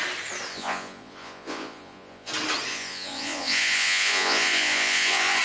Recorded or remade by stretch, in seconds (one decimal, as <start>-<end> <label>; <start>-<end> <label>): 0.0-0.5 recorded; 0.5-2.3 remade; 2.3-2.7 recorded; 2.7-5.4 remade